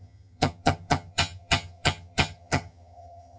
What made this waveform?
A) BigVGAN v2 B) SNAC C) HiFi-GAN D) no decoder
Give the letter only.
C